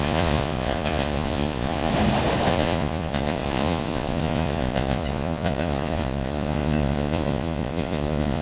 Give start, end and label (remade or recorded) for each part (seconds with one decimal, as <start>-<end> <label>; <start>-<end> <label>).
0.0-1.9 remade; 1.9-2.5 recorded; 2.5-8.4 remade